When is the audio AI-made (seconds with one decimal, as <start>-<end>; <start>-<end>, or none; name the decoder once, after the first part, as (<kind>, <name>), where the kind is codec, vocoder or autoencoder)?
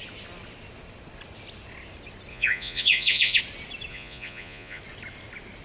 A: 2.3-3.4 (vocoder, Vocos); 3.9-4.8